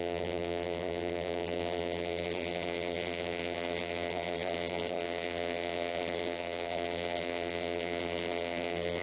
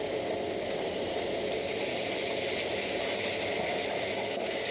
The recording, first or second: second